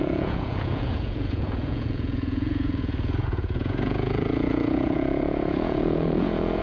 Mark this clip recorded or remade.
remade